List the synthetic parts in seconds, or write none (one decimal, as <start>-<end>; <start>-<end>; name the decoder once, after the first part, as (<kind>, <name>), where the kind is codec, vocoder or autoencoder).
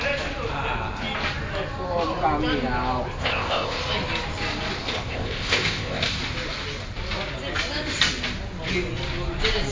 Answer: 3.2-3.8 (codec, ZipCodec); 4.8-6.2